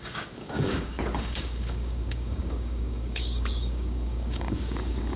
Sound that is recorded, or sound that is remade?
remade